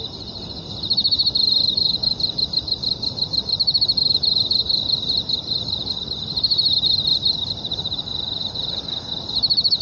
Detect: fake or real real